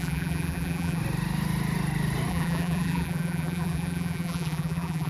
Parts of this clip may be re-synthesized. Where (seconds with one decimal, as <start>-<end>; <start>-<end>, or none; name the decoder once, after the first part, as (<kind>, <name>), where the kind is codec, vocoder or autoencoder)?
0.0-1.0 (vocoder, BigVGAN v2); 2.3-5.1